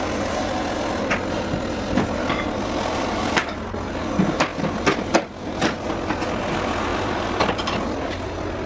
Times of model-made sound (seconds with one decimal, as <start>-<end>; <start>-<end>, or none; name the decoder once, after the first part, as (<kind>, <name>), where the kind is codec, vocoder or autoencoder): 6.9-7.5 (vocoder, BigVGAN v2)

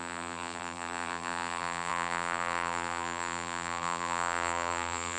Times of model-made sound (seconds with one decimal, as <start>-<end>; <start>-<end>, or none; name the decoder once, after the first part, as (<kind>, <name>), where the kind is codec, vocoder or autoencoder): 0.0-5.2 (vocoder, BigVGAN v2)